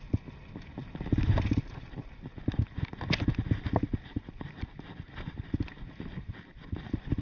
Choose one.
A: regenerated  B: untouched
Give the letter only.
B